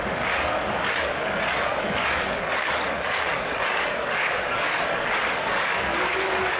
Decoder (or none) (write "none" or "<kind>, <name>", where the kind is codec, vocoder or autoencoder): codec, DAC